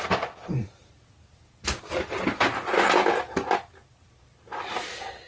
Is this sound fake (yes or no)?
no